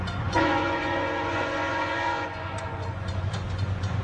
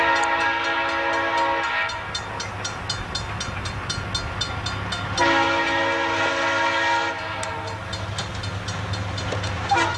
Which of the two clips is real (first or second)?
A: second